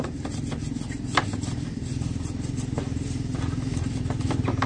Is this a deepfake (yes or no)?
no